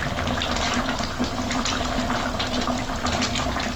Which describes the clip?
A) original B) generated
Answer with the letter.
B